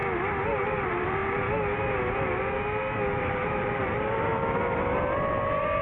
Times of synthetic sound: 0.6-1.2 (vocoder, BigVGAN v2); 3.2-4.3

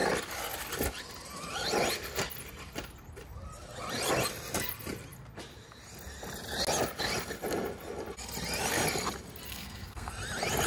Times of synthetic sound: 9.5-10.1 (codec, SNAC)

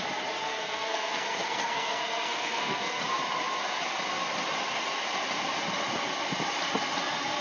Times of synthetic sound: 0.4-3.0 (codec, SNAC)

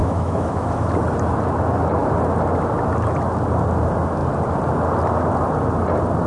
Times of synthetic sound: 0.0-0.9 (autoencoder, DAC-VAE)

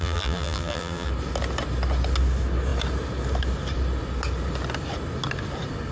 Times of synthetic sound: 0.0-1.1 (vocoder, BigVGAN v2)

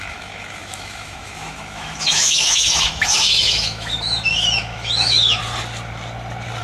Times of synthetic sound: 0.0-5.4 (autoencoder, DAC-VAE)

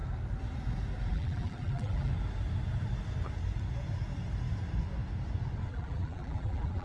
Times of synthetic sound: 1.1-2.1 (vocoder, BigVGAN v2); 5.7-6.8